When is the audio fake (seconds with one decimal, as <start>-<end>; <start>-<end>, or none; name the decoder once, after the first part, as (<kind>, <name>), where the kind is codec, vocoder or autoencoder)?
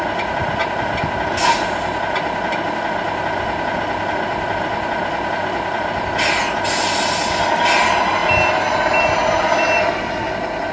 none